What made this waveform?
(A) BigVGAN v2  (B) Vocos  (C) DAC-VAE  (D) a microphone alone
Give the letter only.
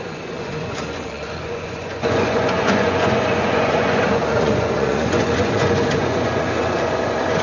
B